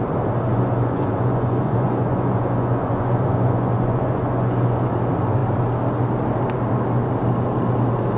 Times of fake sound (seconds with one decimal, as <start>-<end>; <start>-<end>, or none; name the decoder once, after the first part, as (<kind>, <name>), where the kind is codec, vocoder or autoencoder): 0.5-4.9 (vocoder, Vocos)